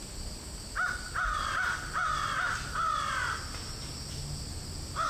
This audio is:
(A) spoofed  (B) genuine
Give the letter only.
B